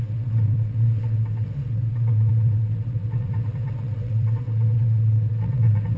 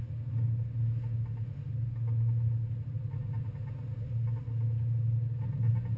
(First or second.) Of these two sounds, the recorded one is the second